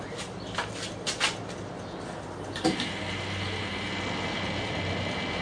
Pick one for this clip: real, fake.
real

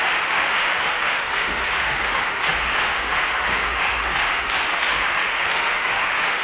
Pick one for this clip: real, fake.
fake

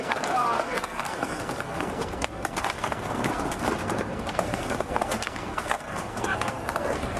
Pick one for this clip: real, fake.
fake